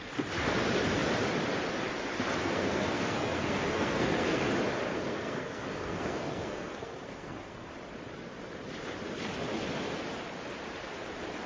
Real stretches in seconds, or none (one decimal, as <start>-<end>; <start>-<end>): 0.0-2.4; 4.5-4.9; 7.7-11.5